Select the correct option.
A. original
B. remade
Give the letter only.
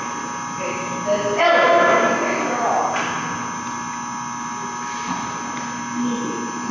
A